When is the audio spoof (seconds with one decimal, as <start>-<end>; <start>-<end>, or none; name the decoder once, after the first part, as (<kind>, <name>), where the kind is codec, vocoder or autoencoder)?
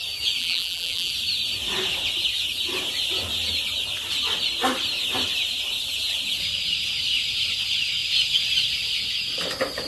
0.4-1.1 (vocoder, BigVGAN v2)